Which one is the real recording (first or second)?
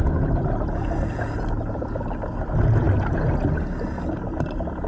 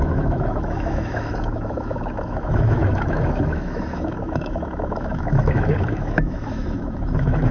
first